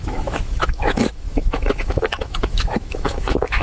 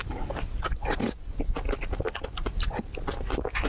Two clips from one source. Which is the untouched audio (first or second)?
second